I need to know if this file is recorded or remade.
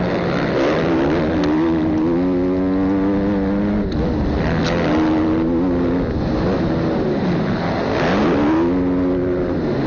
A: recorded